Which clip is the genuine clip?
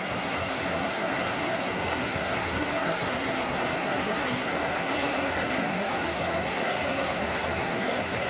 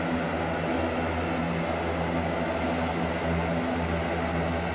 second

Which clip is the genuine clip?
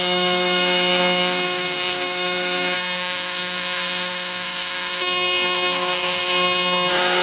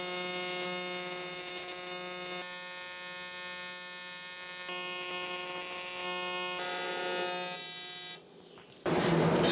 second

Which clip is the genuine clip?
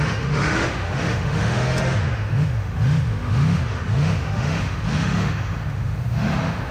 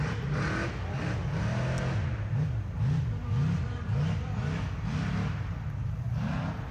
second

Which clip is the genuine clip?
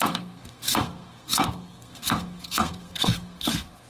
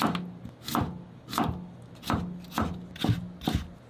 second